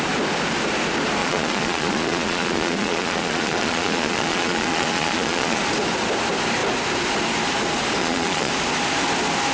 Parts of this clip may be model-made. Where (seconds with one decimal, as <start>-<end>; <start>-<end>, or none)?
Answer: 1.2-5.6; 8.0-8.5